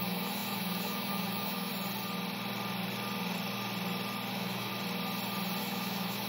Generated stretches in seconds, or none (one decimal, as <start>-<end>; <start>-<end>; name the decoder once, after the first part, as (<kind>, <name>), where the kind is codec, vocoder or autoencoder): 0.0-1.7 (autoencoder, DAC-VAE); 4.3-4.7; 5.6-6.3